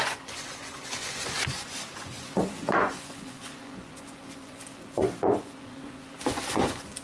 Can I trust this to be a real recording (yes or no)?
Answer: no